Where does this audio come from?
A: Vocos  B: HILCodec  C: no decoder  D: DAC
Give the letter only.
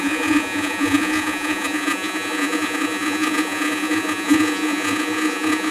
A